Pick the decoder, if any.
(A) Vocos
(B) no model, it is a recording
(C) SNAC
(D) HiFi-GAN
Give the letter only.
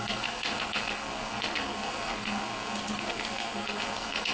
C